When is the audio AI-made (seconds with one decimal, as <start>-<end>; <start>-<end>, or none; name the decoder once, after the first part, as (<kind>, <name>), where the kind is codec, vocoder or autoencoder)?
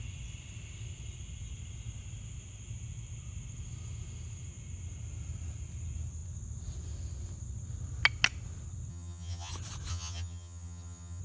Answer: 8.9-9.5 (vocoder, HiFi-GAN); 9.9-11.2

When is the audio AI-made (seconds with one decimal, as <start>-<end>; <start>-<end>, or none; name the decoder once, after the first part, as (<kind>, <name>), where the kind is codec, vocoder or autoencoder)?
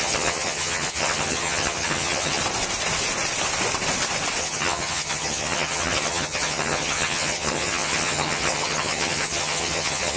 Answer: 0.0-2.4 (vocoder, HiFi-GAN); 4.4-10.2